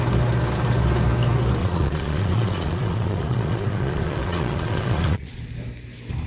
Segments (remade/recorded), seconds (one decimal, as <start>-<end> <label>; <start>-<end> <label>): 0.0-1.6 recorded; 1.6-5.4 remade; 5.4-6.3 recorded